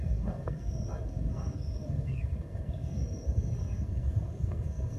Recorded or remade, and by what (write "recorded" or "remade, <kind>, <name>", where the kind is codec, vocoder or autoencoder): remade, codec, SNAC